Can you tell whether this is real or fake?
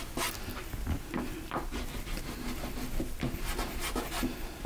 real